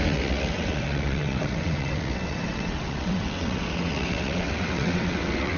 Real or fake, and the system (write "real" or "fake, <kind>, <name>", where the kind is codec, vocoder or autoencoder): fake, vocoder, WaveNeXt